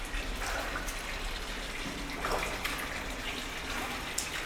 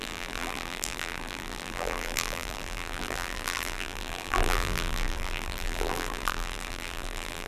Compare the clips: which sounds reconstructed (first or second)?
second